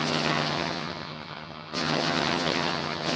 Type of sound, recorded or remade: remade